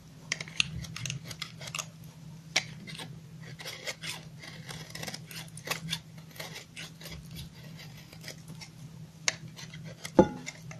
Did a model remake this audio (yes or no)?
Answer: no